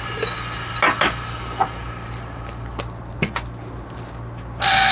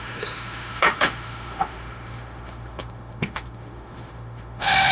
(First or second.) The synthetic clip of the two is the second